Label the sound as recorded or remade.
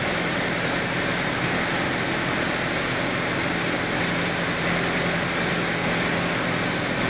recorded